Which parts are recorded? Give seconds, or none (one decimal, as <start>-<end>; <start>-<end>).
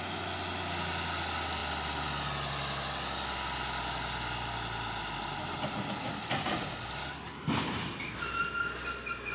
0.0-9.3